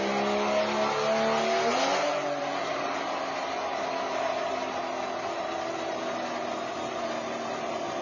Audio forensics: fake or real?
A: real